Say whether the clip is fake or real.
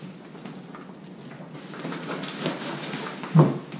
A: real